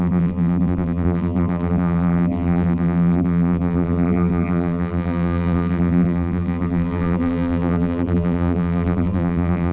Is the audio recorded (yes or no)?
no